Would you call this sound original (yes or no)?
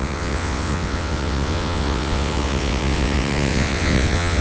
no